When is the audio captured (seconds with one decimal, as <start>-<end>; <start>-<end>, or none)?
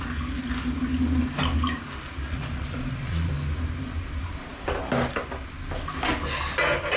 0.0-2.3; 3.3-7.0